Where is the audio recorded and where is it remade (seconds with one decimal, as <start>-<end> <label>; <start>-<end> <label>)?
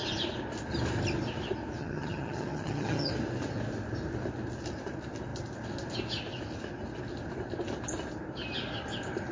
0.0-1.8 recorded; 1.8-3.1 remade; 3.1-9.3 recorded